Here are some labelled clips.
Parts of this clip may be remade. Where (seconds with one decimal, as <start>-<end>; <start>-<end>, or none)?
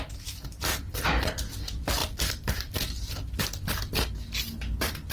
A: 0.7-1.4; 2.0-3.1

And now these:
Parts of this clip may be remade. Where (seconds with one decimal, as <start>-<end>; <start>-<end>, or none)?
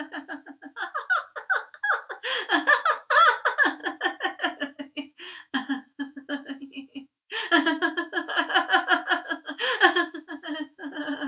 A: 0.0-3.8; 4.8-11.3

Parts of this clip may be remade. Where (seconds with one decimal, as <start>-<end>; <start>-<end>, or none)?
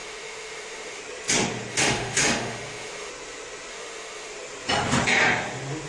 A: 0.0-1.0; 1.7-3.1; 3.7-4.3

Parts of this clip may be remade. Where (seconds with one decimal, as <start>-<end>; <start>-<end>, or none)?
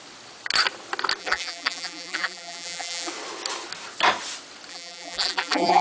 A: 1.2-3.1; 4.7-5.8